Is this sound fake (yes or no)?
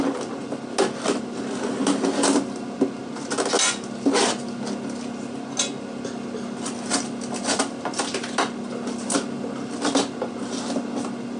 no